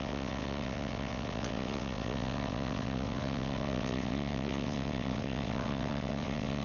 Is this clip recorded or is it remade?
remade